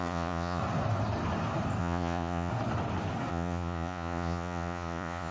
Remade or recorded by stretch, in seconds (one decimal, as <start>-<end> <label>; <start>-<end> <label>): 0.0-0.6 remade; 0.6-1.8 recorded; 1.8-2.5 remade; 2.5-3.3 recorded; 3.3-5.3 remade